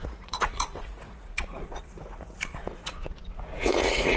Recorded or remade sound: remade